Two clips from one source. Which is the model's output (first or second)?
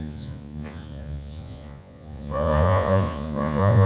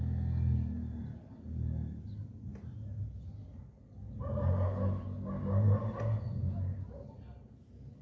first